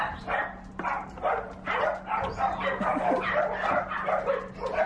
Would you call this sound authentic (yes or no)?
yes